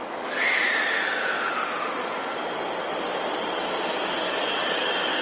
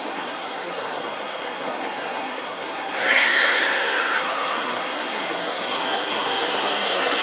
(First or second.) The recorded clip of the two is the first